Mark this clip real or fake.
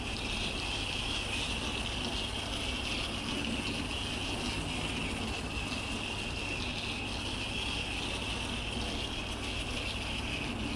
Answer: real